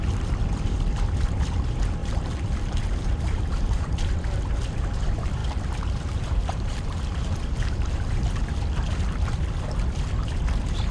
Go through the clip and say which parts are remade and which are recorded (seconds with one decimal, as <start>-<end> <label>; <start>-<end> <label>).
0.0-2.0 recorded; 2.0-3.9 remade; 3.9-5.4 recorded; 5.4-8.2 remade; 8.2-10.9 recorded